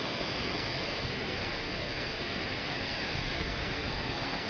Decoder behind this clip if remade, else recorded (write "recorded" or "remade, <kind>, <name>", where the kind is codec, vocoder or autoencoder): remade, codec, SNAC